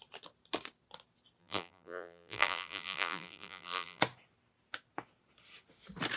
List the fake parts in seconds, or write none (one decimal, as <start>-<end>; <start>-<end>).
1.4-4.0